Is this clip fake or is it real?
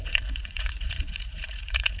fake